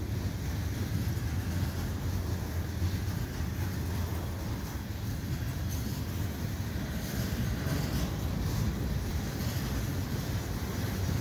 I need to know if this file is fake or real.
real